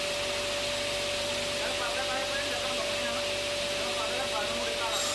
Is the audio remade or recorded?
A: recorded